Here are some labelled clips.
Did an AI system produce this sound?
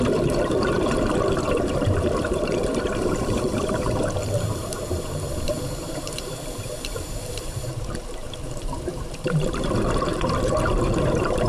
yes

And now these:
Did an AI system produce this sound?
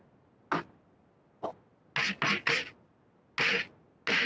no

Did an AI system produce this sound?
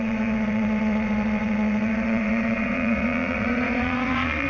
yes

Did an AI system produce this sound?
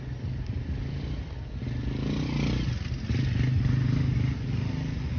no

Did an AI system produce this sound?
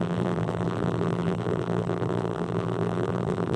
yes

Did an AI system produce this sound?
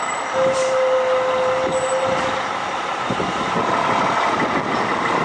no